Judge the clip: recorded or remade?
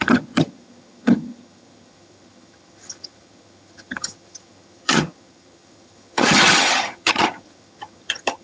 remade